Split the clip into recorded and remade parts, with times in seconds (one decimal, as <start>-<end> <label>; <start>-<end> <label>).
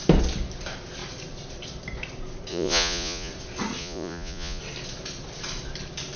0.0-2.5 recorded; 2.5-3.3 remade; 3.3-3.8 recorded; 3.8-4.6 remade; 4.6-6.2 recorded